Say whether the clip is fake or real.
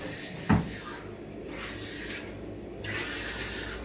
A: real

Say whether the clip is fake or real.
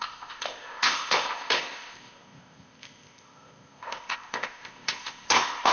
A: fake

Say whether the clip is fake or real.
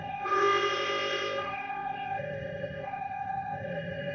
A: fake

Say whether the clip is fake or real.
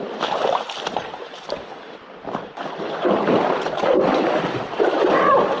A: real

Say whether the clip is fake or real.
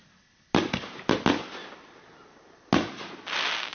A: real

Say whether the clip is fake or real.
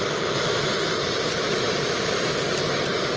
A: real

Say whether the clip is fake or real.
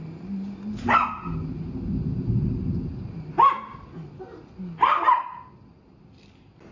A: real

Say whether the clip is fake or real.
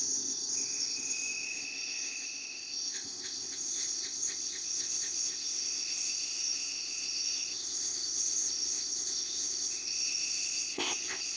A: fake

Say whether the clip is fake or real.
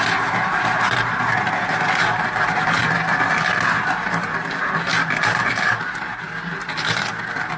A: real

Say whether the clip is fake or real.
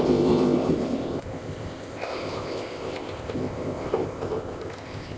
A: fake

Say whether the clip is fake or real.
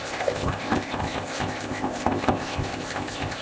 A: fake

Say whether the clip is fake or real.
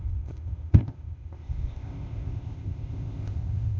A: fake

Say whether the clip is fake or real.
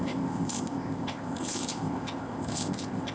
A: fake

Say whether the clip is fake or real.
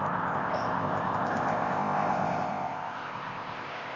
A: fake